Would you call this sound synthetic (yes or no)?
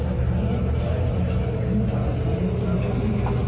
no